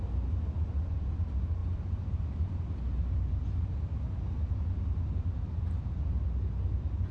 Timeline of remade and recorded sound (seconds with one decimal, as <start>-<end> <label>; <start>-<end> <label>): 0.0-7.1 recorded